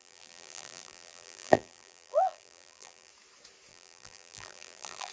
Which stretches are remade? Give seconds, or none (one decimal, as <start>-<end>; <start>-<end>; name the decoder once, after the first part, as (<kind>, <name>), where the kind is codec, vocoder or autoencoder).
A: 0.0-3.1 (vocoder, BigVGAN v2); 3.7-5.1